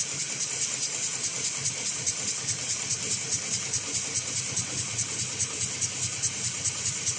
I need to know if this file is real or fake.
real